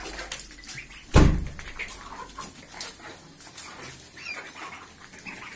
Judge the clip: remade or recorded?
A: recorded